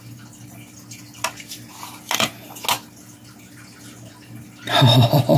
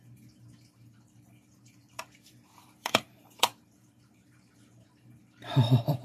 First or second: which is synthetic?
second